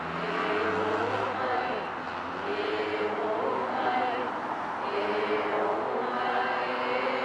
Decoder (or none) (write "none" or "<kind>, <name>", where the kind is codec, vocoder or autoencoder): none